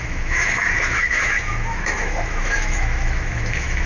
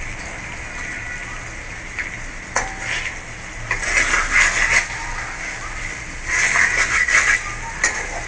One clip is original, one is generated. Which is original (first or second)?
second